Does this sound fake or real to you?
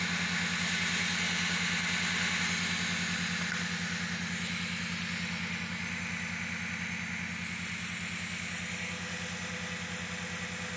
real